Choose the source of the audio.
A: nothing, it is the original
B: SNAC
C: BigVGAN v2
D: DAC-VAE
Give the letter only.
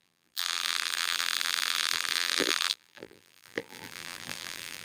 C